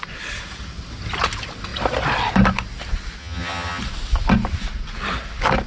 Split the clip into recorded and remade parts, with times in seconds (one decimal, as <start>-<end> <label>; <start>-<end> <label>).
0.0-3.2 recorded; 3.2-3.8 remade; 3.8-5.7 recorded